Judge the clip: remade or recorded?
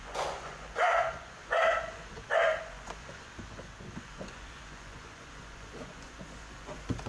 remade